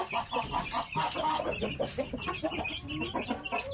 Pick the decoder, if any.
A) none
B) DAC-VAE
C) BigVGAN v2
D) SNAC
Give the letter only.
A